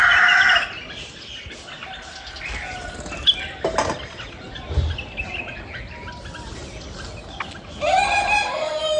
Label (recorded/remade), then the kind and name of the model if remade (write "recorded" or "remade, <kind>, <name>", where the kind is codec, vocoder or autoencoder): recorded